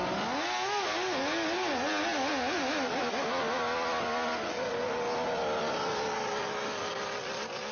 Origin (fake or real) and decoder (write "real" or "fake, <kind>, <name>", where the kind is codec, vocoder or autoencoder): real